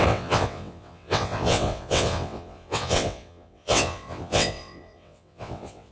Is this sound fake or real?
fake